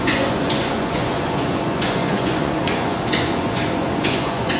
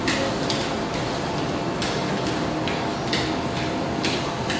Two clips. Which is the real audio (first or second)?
second